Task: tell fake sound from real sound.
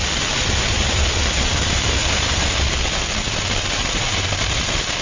real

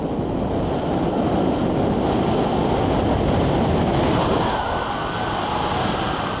real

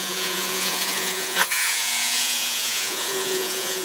fake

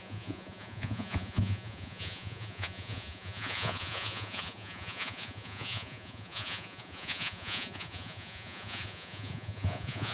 fake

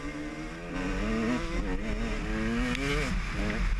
real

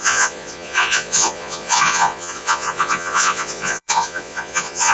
fake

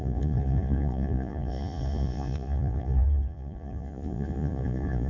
fake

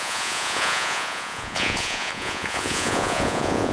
fake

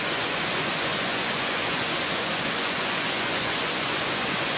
fake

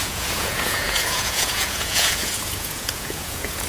fake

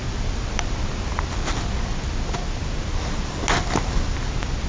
real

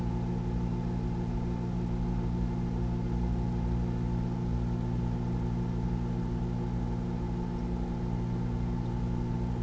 real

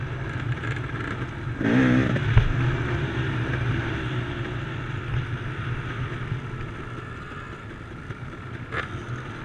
real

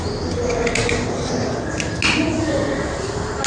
real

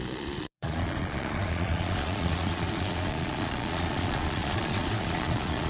fake